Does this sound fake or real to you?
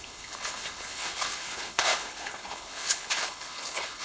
fake